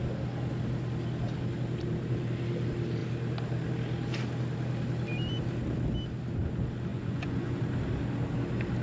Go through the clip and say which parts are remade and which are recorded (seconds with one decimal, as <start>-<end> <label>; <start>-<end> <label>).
0.0-6.9 recorded; 6.9-7.6 remade; 7.6-8.8 recorded